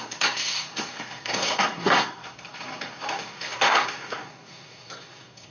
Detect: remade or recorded remade